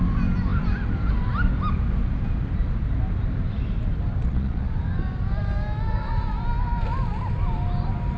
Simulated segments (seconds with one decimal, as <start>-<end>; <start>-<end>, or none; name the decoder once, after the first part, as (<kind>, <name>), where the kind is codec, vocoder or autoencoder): 4.2-4.7 (vocoder, Vocos)